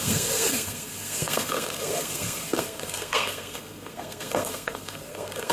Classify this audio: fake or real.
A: fake